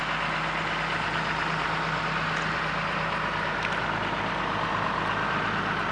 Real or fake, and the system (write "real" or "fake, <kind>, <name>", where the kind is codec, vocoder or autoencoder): real